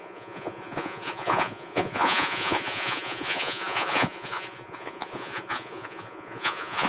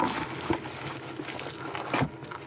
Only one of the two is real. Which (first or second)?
second